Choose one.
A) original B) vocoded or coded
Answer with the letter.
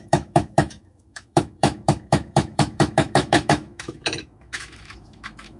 B